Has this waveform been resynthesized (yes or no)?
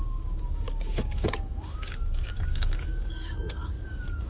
yes